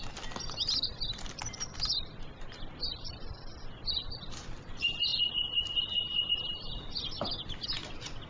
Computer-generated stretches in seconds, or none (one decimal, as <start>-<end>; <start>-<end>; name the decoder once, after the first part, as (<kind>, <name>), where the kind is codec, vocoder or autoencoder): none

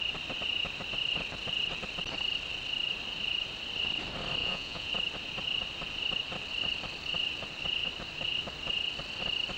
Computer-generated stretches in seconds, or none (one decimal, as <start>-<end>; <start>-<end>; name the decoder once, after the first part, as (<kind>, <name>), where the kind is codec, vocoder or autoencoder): 4.4-4.9 (vocoder, Vocos)

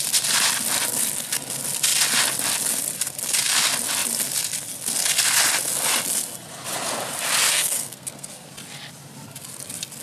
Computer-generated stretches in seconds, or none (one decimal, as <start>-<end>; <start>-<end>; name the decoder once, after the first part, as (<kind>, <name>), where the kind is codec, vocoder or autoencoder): 7.5-8.5 (codec, SNAC)